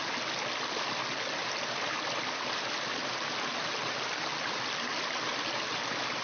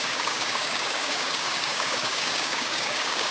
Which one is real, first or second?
first